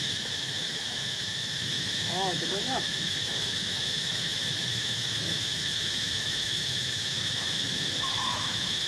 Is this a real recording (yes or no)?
no